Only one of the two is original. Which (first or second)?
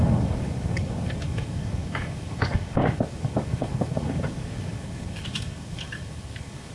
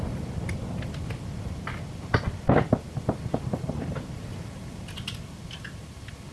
second